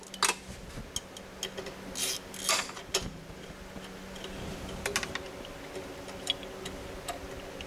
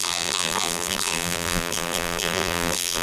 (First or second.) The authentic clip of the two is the first